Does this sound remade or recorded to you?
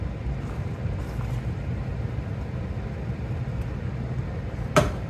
recorded